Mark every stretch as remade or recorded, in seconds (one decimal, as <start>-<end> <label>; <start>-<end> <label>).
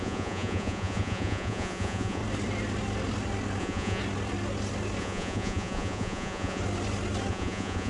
0.0-2.2 remade; 2.2-3.6 recorded; 3.6-4.0 remade; 4.0-5.0 recorded; 5.0-6.6 remade; 6.6-7.3 recorded; 7.3-7.9 remade